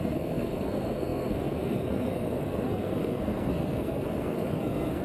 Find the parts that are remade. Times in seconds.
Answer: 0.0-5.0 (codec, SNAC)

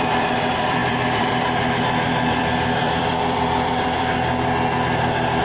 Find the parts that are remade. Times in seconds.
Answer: 0.0-4.1 (vocoder, BigVGAN v2)

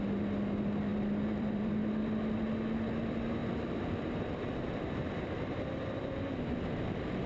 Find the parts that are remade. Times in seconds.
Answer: 0.9-1.7 (vocoder, BigVGAN v2); 3.4-6.2

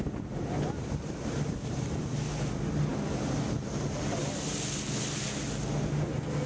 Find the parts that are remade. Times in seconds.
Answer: none

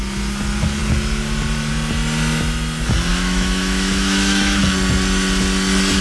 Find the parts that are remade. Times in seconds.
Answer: 3.1-4.6 (autoencoder, DAC-VAE)

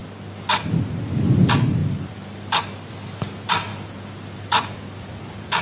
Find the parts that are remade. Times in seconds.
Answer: 0.0-0.6 (vocoder, BigVGAN v2); 1.8-2.9; 3.7-5.6

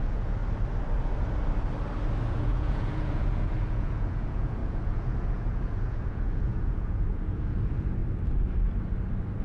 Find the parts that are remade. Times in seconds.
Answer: 0.0-0.4 (vocoder, Vocos); 2.3-8.0

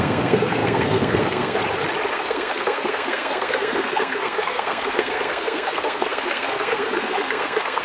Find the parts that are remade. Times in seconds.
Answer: 0.0-1.6 (codec, SNAC); 2.1-7.8